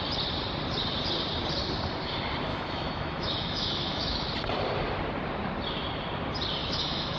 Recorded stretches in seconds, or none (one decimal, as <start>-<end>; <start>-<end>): 0.0-2.5; 4.3-6.6